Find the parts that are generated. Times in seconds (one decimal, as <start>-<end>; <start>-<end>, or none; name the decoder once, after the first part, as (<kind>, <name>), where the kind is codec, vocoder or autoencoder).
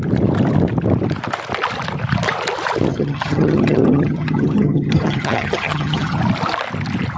2.9-6.2 (vocoder, HiFi-GAN)